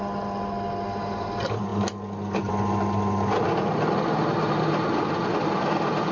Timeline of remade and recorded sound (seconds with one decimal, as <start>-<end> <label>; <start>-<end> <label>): 0.0-6.1 recorded

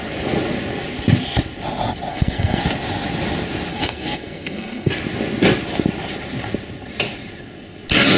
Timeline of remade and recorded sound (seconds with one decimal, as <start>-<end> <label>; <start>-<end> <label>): 0.0-2.1 recorded; 2.1-2.6 remade; 2.6-3.7 recorded; 3.7-4.9 remade; 4.9-8.2 recorded

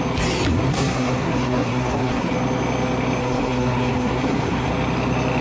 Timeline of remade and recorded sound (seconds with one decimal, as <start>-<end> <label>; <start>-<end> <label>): 0.0-0.7 recorded; 0.7-2.3 remade; 2.3-3.2 recorded; 3.2-4.7 remade; 4.7-5.4 recorded

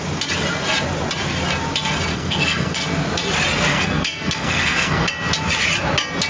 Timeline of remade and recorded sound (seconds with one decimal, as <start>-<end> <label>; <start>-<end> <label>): 0.0-2.1 recorded; 2.1-2.9 remade; 2.9-3.7 recorded; 3.7-5.1 remade; 5.1-6.3 recorded

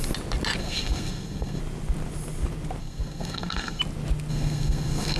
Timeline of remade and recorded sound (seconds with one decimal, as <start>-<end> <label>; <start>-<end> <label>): 0.0-0.6 recorded; 0.6-1.6 remade; 1.6-2.8 recorded; 2.8-3.8 remade; 3.8-4.3 recorded; 4.3-5.2 remade